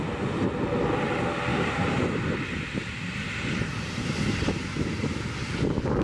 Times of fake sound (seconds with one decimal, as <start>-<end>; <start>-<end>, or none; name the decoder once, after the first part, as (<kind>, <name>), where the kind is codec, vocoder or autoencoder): 1.5-5.1 (vocoder, BigVGAN v2)

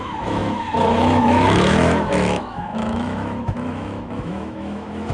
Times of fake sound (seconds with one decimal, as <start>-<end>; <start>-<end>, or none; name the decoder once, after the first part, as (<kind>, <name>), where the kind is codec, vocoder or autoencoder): 0.0-5.1 (autoencoder, DAC-VAE)

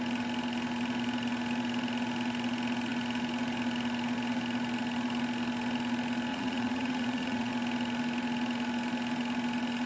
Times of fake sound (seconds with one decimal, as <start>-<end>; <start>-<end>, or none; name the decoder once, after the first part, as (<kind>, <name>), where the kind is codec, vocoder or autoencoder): 6.3-7.5 (vocoder, Vocos)

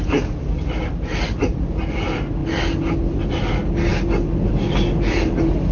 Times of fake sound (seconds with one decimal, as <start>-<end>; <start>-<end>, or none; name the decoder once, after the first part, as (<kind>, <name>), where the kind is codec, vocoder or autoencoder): none